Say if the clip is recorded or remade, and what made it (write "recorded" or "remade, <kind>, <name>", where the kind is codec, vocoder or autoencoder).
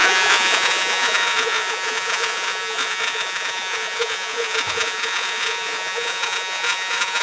remade, vocoder, Vocos